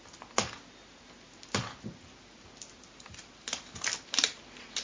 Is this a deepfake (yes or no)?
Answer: no